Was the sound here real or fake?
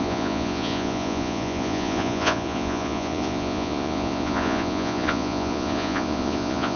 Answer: fake